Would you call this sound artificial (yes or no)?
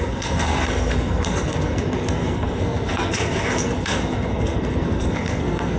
yes